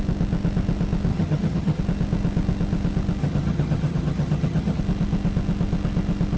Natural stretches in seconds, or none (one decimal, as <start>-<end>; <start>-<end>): 0.0-1.1; 1.8-3.2; 4.8-6.4